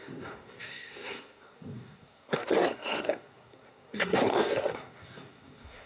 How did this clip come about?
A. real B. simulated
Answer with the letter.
B